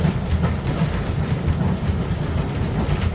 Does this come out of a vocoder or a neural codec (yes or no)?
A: no